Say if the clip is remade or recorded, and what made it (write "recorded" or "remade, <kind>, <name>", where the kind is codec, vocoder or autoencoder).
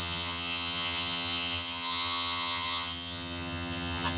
remade, vocoder, HiFi-GAN